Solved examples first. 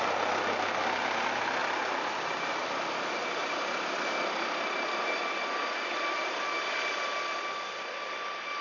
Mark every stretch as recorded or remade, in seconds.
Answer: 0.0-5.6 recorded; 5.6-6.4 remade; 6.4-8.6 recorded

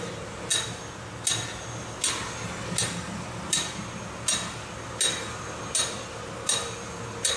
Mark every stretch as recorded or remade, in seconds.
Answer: 0.0-7.4 recorded

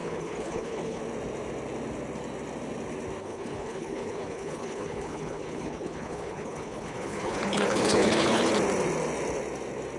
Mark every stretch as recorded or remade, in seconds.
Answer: 0.0-1.0 remade; 1.0-3.2 recorded; 3.2-8.5 remade; 8.5-10.0 recorded

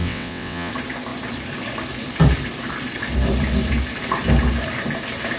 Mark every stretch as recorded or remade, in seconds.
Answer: 0.0-0.7 remade; 0.7-5.4 recorded

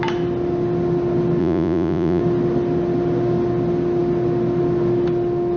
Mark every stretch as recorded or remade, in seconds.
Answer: 0.0-1.4 recorded; 1.4-2.2 remade; 2.2-5.6 recorded